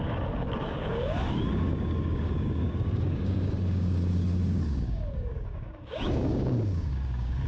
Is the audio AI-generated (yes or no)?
yes